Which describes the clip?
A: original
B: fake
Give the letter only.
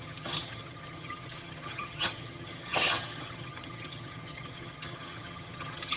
B